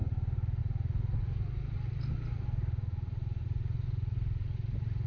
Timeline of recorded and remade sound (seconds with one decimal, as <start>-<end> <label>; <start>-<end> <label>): 0.0-5.1 recorded

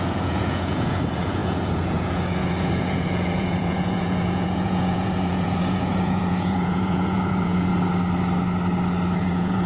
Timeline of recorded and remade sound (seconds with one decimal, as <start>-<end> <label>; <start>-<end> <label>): 0.0-7.7 remade; 7.7-9.2 recorded; 9.2-9.7 remade

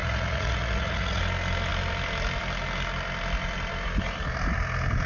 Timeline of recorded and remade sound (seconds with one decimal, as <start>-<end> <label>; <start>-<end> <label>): 0.0-1.2 remade; 1.2-5.1 recorded